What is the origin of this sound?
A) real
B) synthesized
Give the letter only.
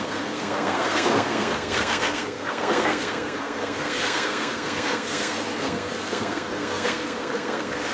B